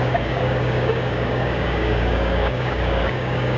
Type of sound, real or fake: fake